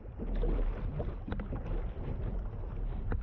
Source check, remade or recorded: recorded